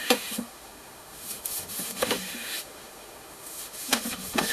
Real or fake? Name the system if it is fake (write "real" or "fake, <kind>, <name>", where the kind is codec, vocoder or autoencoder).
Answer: fake, autoencoder, DAC-VAE